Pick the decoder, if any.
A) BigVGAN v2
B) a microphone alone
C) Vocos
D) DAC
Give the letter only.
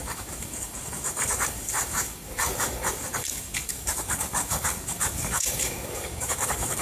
D